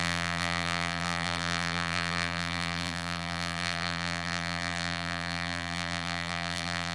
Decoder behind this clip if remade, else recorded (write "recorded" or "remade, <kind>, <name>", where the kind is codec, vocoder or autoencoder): remade, vocoder, BigVGAN v2